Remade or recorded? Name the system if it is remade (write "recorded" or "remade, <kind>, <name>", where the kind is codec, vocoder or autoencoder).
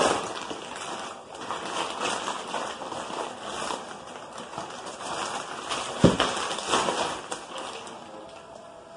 recorded